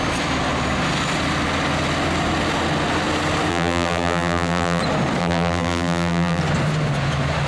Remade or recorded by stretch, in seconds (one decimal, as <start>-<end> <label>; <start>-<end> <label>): 0.0-3.5 recorded; 3.5-4.8 remade; 4.8-5.2 recorded; 5.2-6.4 remade; 6.4-7.5 recorded

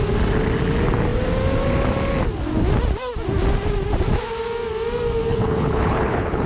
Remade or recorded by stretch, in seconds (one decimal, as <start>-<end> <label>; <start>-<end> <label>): 0.0-5.3 recorded; 5.3-6.5 remade

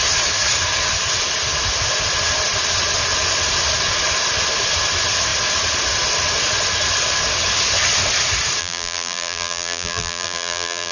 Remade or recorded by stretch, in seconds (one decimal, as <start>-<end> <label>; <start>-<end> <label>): 0.0-8.6 recorded; 8.6-10.9 remade